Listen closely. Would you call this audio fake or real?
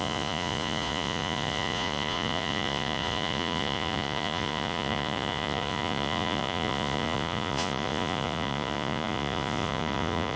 fake